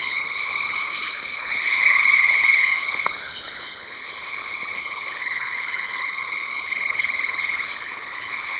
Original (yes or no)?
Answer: no